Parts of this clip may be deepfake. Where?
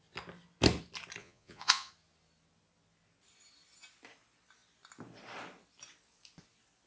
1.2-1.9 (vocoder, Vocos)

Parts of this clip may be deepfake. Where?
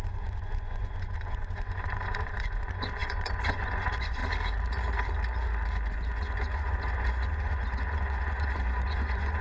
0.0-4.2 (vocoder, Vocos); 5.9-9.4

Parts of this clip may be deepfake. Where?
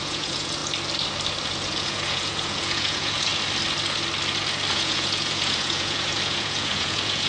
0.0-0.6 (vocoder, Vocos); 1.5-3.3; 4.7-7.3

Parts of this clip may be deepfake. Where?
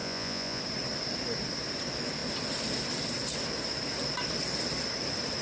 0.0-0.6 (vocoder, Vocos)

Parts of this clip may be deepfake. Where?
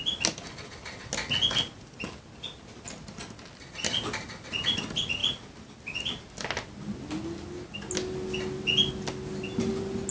none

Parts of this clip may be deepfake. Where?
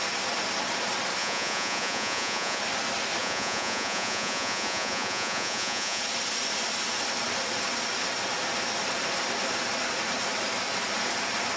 1.2-2.6 (vocoder, Vocos); 3.2-6.0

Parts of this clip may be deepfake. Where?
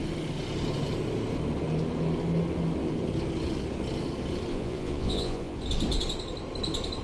4.5-5.6 (vocoder, Vocos)